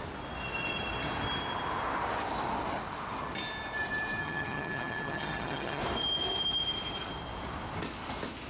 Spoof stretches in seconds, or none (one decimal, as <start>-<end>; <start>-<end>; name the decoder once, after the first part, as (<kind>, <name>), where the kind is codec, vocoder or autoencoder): 4.2-5.8 (vocoder, HiFi-GAN)